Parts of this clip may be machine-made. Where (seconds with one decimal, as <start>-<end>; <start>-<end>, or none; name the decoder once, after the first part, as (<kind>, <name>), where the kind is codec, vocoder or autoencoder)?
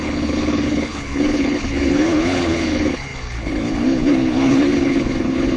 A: 0.0-5.6 (codec, HILCodec)